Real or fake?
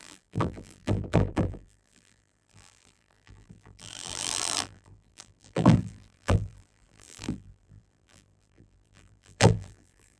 fake